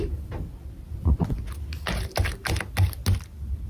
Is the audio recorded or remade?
recorded